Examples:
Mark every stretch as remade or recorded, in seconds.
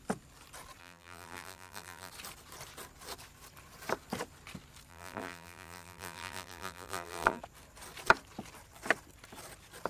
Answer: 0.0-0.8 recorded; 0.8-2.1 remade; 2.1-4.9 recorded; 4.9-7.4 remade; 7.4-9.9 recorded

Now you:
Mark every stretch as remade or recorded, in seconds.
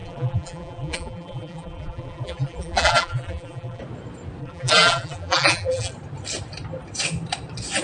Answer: 0.0-3.8 remade; 3.8-4.4 recorded; 4.4-5.9 remade; 5.9-7.8 recorded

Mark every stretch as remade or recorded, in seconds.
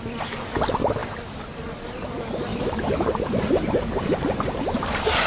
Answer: 0.0-2.5 recorded; 2.5-3.5 remade; 3.5-5.3 recorded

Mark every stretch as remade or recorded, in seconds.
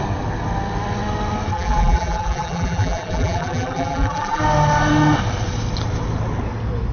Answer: 0.0-1.5 recorded; 1.5-4.4 remade; 4.4-6.9 recorded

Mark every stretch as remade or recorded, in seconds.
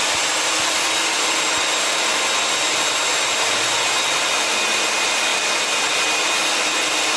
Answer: 0.0-7.2 recorded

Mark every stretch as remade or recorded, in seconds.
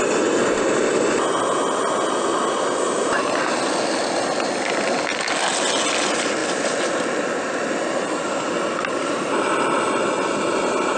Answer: 0.0-6.4 recorded; 6.4-9.1 remade; 9.1-11.0 recorded